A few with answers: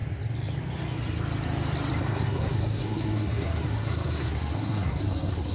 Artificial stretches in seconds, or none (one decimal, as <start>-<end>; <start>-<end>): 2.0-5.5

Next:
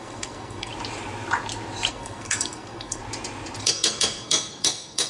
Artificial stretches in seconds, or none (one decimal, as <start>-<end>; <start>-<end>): 0.0-0.7; 1.9-3.0; 3.6-5.1

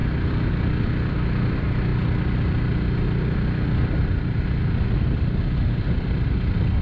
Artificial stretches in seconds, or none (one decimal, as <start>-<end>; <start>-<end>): none